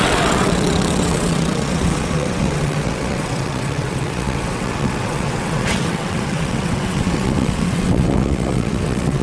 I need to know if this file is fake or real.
fake